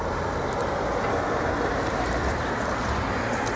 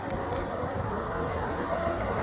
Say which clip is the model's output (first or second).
second